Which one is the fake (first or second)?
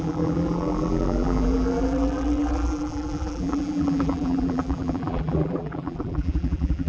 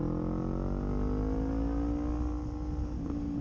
first